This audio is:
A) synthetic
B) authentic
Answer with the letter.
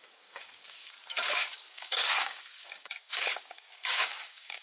A